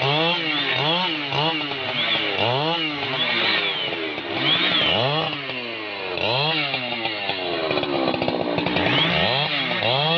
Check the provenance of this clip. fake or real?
real